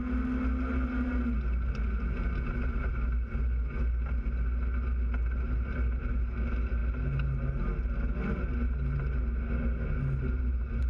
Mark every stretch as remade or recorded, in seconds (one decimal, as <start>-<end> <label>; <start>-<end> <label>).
0.0-10.9 recorded